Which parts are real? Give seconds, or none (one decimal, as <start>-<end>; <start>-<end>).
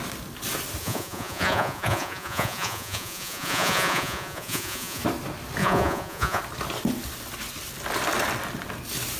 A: 0.0-0.8; 5.0-5.6; 6.4-9.2